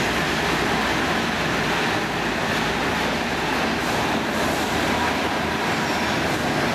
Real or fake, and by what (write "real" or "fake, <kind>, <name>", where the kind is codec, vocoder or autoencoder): real